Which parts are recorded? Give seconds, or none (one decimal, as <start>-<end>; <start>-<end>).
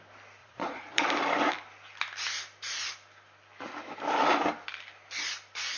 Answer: 0.0-0.4; 1.1-5.8